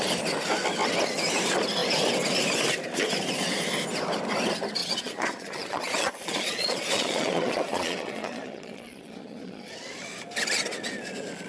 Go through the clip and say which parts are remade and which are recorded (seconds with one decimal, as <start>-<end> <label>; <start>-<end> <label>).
0.0-4.8 recorded; 4.8-9.7 remade; 9.7-11.5 recorded